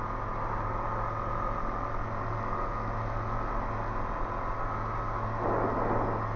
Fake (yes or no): no